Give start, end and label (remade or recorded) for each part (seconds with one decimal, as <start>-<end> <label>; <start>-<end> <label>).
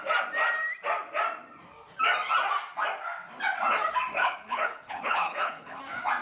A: 0.0-4.2 recorded; 4.2-5.8 remade; 5.8-6.2 recorded